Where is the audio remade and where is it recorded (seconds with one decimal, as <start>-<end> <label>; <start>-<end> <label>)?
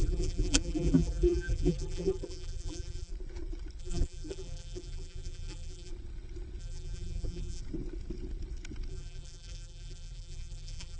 0.0-3.1 remade; 3.1-3.8 recorded; 3.8-5.9 remade; 5.9-6.6 recorded; 6.6-7.6 remade; 7.6-8.9 recorded; 8.9-11.0 remade